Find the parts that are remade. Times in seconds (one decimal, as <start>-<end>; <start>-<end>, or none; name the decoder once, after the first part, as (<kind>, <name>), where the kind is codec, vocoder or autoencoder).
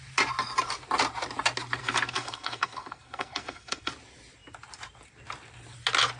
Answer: 1.8-3.9 (codec, SNAC)